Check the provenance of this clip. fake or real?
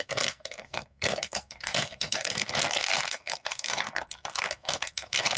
fake